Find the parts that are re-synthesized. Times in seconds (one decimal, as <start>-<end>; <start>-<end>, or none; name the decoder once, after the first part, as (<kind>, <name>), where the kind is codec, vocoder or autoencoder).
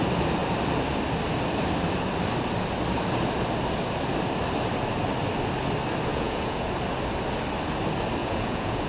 6.1-6.7 (vocoder, Vocos); 8.2-8.9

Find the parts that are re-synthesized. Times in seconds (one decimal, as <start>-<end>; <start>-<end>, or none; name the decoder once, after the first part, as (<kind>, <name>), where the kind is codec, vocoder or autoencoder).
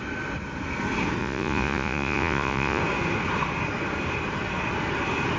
1.2-2.8 (vocoder, Vocos)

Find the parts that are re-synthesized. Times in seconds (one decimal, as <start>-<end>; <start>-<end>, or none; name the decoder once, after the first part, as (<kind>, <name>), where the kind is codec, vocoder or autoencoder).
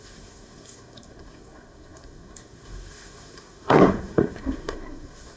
0.0-5.4 (codec, SNAC)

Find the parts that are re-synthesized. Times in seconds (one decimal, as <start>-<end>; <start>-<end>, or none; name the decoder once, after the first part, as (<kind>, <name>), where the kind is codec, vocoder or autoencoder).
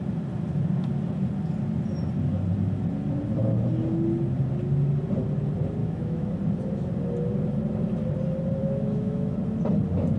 5.8-6.3 (autoencoder, DAC-VAE); 8.6-9.4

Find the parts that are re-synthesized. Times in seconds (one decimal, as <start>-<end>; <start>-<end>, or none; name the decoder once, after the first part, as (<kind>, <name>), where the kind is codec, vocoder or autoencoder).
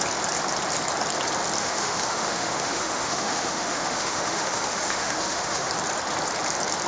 1.6-5.7 (autoencoder, DAC-VAE)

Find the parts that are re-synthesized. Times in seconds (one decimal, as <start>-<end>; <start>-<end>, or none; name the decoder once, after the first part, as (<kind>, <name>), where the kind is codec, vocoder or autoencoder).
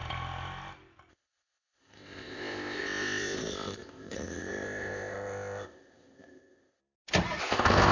1.1-6.8 (codec, ZipCodec); 7.4-7.9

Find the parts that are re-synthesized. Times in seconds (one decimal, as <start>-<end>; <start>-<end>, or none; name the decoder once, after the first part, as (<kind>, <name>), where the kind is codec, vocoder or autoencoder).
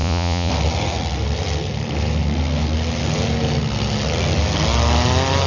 0.0-0.5 (vocoder, Vocos)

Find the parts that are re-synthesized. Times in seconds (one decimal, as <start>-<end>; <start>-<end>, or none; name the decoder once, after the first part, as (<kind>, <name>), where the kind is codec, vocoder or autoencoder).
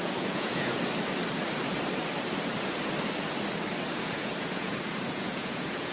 0.0-0.8 (vocoder, Vocos); 3.9-5.9